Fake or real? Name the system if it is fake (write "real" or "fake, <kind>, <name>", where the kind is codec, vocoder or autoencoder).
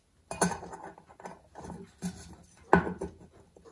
real